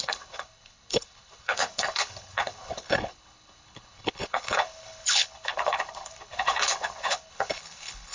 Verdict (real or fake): fake